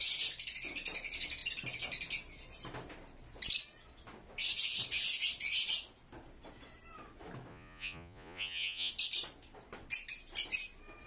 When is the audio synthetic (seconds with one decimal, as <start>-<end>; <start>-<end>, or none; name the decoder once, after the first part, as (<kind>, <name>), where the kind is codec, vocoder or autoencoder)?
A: 7.5-8.9 (vocoder, Vocos)